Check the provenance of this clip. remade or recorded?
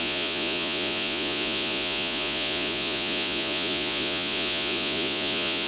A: remade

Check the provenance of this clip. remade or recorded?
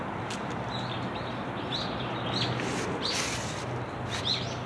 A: recorded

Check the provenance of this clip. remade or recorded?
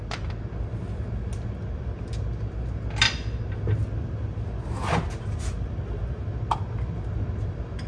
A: recorded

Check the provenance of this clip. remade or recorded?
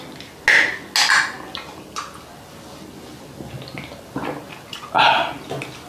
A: recorded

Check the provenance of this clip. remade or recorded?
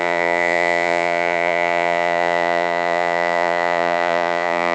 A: remade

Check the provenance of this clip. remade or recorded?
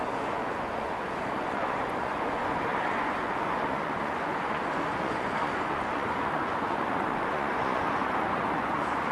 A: remade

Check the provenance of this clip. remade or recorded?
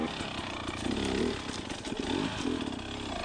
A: recorded